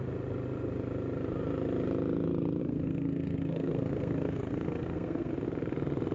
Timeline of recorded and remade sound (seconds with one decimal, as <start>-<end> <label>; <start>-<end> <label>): 0.0-2.6 recorded; 2.6-5.3 remade; 5.3-6.1 recorded